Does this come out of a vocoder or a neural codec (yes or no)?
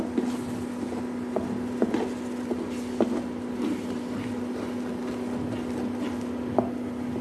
no